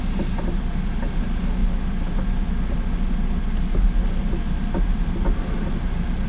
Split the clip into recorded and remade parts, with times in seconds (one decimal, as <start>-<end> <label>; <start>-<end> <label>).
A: 0.0-6.3 recorded